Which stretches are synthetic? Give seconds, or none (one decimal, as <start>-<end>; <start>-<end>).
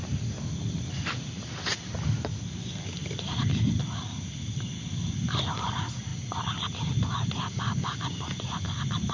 3.0-3.8